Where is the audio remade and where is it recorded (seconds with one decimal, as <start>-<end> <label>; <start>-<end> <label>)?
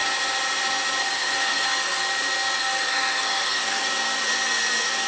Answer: 0.0-1.0 recorded; 1.0-2.0 remade; 2.0-2.6 recorded; 2.6-3.8 remade; 3.8-5.1 recorded